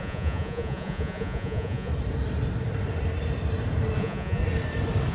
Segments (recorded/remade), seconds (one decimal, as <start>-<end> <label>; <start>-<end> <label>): 0.0-1.9 remade; 1.9-4.0 recorded; 4.0-4.4 remade; 4.4-5.1 recorded